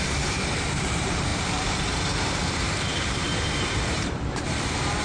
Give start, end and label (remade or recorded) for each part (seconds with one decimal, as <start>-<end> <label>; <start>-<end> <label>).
0.0-5.0 remade